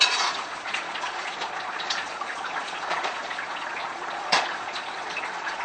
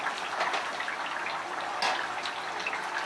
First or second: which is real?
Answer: second